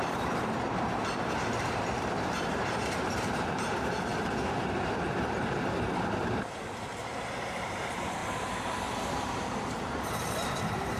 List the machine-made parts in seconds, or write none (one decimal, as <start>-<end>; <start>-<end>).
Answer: 0.0-11.0